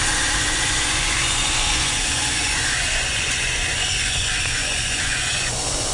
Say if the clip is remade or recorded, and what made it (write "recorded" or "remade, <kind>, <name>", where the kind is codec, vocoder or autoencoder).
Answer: remade, vocoder, Vocos